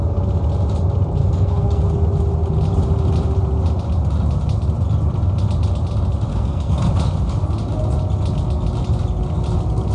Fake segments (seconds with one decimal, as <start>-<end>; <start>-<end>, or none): 1.2-1.8; 6.3-6.9